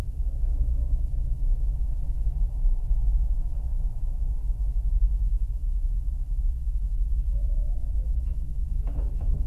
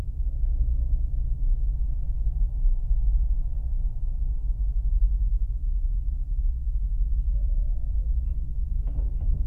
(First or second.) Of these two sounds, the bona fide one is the second